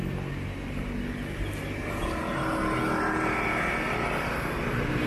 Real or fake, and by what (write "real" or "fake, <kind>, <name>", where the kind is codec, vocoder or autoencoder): real